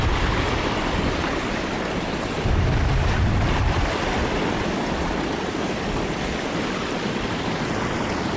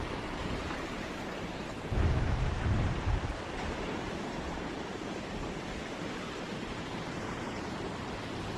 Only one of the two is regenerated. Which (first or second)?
second